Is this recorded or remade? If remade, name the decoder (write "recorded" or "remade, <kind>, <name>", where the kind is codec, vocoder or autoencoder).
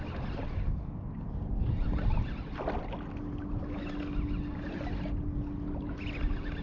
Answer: recorded